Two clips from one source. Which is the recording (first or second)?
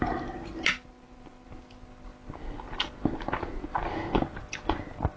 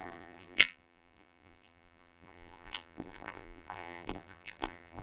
first